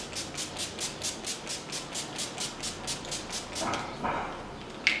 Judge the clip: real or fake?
real